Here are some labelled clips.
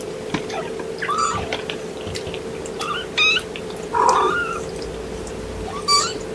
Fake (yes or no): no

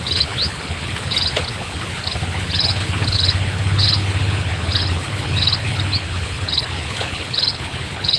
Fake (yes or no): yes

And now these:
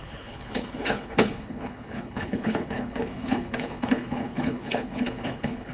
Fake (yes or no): yes